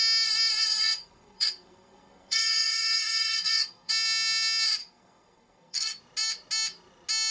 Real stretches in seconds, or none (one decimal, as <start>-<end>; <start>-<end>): 0.0-0.5; 3.9-4.8; 6.0-7.3